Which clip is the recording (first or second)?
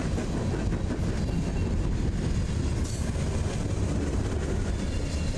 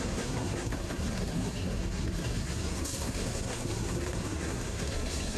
first